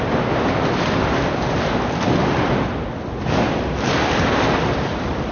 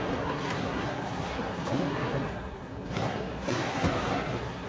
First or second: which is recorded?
first